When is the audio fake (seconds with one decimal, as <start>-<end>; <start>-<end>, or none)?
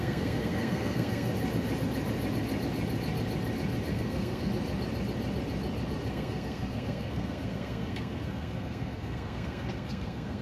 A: 0.0-1.3; 3.9-4.5; 6.1-10.4